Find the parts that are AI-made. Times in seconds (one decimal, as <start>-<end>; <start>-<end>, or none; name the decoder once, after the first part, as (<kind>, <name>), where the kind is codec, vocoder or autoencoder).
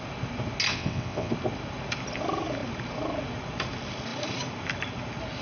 0.7-1.3 (vocoder, WaveNeXt)